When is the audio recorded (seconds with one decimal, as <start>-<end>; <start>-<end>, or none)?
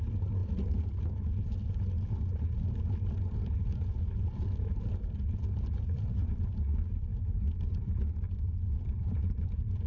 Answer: 0.0-8.9; 9.5-9.9